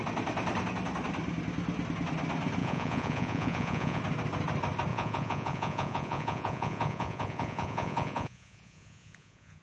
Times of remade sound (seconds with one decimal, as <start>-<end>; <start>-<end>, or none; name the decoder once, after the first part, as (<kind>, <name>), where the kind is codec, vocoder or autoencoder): 2.6-4.0 (vocoder, Vocos); 4.9-9.6